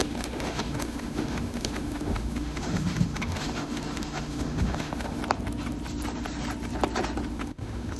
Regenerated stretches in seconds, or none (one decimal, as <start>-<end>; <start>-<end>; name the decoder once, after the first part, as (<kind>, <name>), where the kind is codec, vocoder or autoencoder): 0.0-5.2 (autoencoder, DAC-VAE); 7.3-8.0